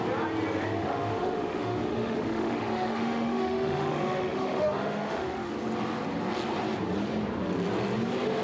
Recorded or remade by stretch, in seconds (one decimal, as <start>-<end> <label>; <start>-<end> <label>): 0.0-0.8 recorded; 0.8-5.5 remade; 5.5-8.4 recorded